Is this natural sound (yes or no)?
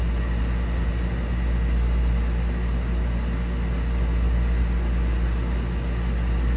yes